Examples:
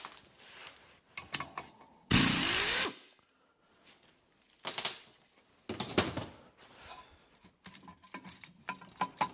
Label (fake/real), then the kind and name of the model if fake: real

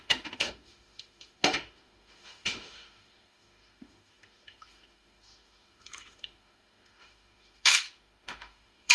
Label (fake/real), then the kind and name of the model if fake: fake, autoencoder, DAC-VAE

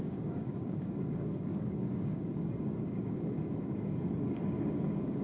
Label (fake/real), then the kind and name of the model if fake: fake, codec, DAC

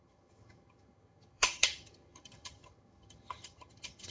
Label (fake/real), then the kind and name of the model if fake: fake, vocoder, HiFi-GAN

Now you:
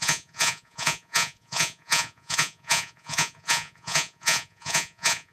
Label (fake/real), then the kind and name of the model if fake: fake, vocoder, Vocos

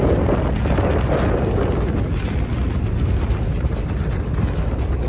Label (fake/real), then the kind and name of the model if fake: real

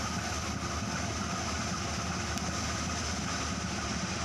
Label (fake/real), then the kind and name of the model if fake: real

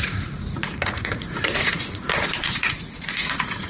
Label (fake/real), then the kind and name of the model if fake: fake, vocoder, Vocos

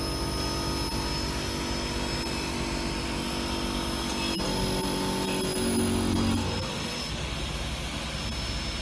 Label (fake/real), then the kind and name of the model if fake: real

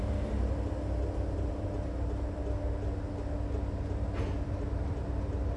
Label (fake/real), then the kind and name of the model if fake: real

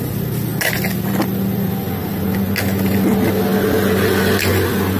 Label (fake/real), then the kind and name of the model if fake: real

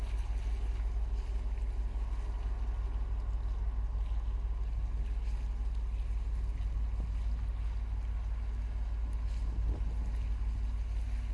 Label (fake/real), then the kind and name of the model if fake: real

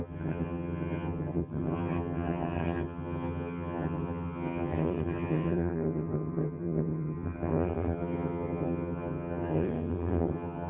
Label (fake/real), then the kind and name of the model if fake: fake, vocoder, HiFi-GAN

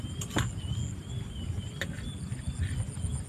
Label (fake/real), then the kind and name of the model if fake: real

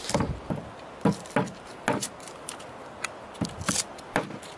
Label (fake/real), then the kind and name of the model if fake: real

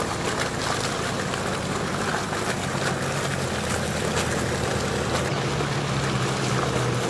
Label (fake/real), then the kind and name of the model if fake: real